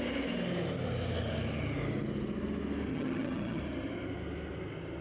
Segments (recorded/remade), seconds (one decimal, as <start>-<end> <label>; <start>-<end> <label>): 0.0-2.9 recorded; 2.9-3.6 remade; 3.6-5.0 recorded